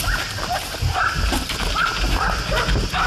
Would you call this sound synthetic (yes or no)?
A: no